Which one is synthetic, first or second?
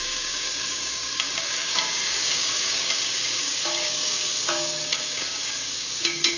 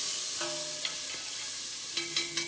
first